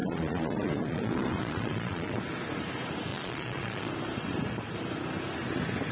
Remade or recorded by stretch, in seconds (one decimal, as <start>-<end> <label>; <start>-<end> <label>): 0.0-2.2 remade; 2.2-3.1 recorded; 3.1-3.9 remade; 3.9-5.9 recorded